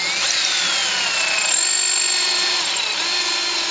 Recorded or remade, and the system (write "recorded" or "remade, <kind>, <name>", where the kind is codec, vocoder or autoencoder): recorded